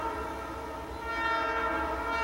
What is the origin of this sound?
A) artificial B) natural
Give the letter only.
B